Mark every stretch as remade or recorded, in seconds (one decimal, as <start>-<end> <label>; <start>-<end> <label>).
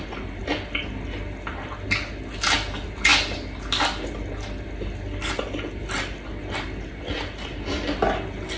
0.0-8.6 recorded